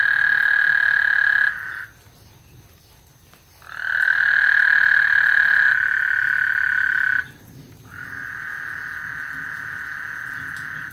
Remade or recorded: recorded